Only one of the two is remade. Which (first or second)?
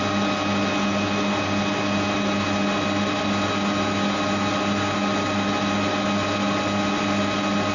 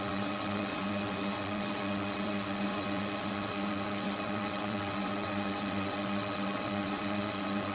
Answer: second